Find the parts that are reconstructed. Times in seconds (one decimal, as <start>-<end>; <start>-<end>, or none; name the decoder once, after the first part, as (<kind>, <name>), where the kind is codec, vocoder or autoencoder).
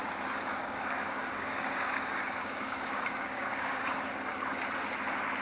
0.6-3.8 (codec, DAC)